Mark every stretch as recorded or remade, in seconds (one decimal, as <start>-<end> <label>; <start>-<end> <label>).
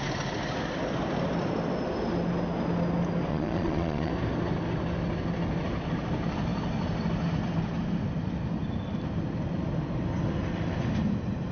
0.0-3.3 recorded; 3.3-4.1 remade; 4.1-11.5 recorded